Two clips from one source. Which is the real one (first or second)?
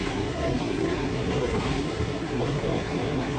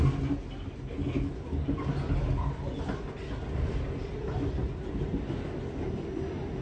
second